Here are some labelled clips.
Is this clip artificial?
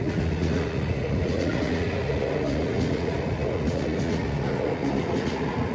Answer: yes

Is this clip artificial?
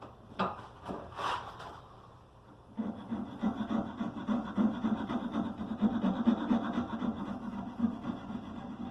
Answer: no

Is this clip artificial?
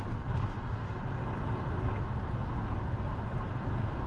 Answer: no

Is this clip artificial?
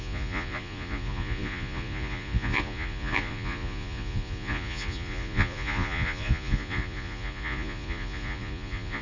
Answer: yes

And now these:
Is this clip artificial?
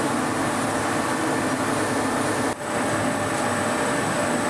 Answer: no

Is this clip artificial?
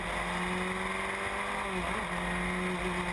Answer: no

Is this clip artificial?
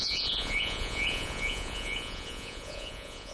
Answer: yes